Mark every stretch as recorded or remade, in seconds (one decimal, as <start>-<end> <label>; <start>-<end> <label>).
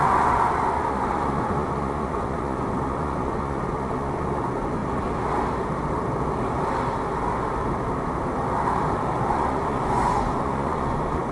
0.0-4.8 remade; 4.8-9.3 recorded; 9.3-11.3 remade